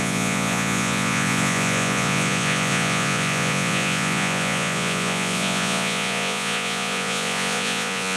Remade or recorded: remade